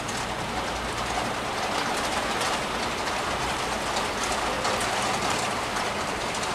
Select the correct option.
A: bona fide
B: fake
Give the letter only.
A